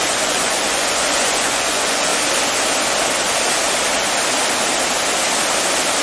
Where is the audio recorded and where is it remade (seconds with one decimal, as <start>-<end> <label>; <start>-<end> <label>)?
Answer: 0.0-2.1 remade; 2.1-6.0 recorded